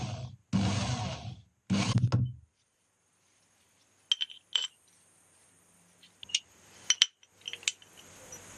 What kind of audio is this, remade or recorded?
recorded